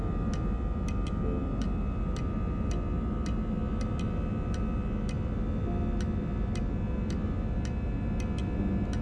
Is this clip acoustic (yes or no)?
yes